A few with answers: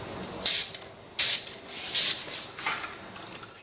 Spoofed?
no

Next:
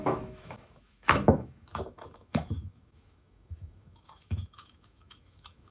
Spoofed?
yes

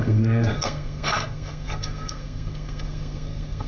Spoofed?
yes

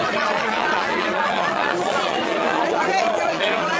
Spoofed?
yes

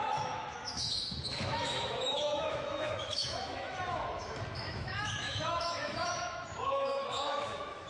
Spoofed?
yes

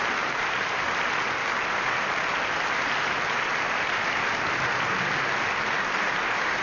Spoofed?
no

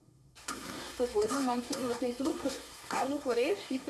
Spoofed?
yes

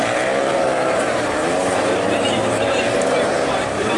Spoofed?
yes